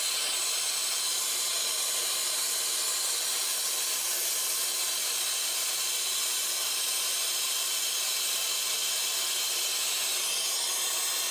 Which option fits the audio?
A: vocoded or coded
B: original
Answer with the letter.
B